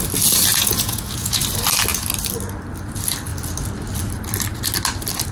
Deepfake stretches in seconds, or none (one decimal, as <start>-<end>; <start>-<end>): 0.5-1.4